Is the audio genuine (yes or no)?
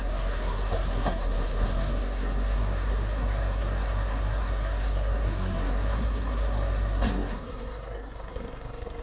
no